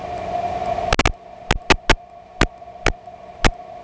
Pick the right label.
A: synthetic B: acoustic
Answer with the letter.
B